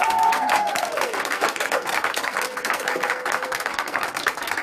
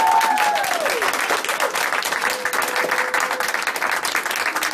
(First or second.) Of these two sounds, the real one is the second